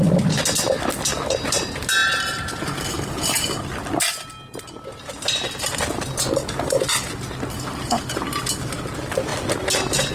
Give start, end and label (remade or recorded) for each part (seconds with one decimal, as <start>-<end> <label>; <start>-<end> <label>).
0.0-10.1 recorded